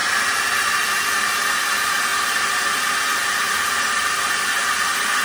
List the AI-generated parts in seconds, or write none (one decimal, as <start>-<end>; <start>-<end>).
0.0-0.9